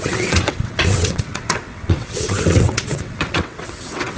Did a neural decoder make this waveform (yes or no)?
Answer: yes